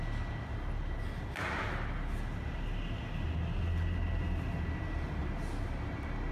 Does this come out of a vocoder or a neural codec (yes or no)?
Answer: no